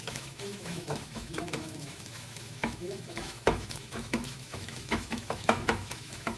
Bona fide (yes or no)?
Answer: no